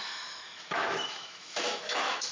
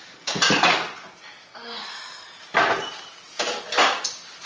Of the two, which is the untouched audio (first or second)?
second